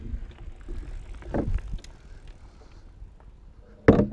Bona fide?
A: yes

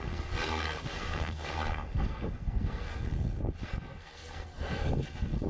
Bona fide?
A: no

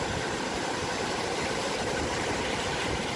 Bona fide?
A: no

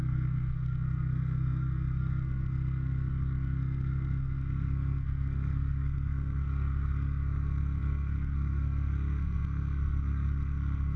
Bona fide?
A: no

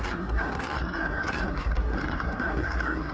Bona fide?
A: no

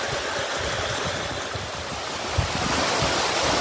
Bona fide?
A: yes